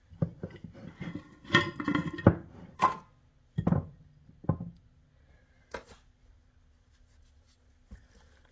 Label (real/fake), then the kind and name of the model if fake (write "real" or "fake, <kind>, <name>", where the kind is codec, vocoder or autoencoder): real